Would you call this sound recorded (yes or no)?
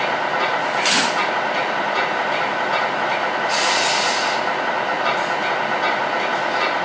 yes